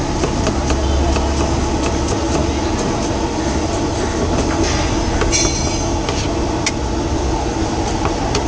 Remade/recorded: recorded